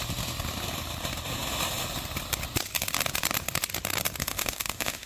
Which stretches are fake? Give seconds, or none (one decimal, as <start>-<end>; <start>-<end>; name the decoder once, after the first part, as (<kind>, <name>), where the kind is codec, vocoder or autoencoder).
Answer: 4.2-5.1 (autoencoder, DAC-VAE)